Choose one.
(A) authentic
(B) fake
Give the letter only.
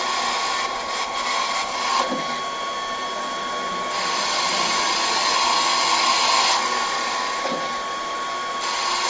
A